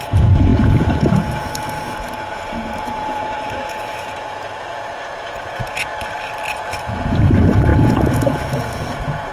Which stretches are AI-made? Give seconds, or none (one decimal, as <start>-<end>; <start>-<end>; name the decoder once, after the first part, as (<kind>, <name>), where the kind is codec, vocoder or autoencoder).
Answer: 0.0-5.9 (vocoder, Vocos); 6.5-9.3